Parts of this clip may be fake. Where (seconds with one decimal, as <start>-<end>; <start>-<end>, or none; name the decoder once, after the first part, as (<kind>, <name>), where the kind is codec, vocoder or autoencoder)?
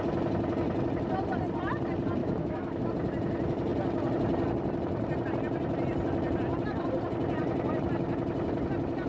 2.2-2.9 (autoencoder, DAC-VAE)